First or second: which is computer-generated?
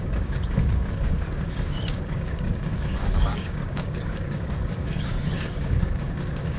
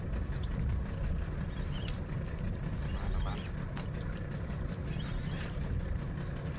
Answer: first